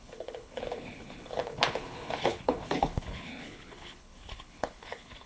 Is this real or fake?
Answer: fake